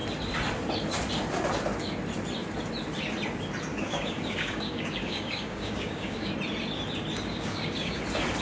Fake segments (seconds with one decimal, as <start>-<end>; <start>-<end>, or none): 3.7-6.3; 7.3-8.0